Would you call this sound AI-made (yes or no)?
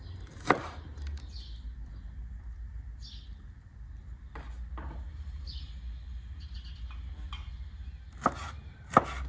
no